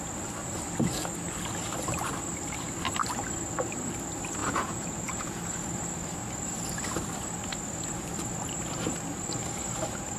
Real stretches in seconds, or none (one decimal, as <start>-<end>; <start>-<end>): 0.0-4.4; 5.4-10.2